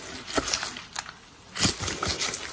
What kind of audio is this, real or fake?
real